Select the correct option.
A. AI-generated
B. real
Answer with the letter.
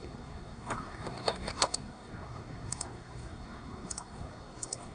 A